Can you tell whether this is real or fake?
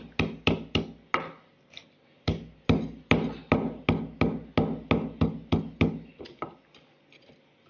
real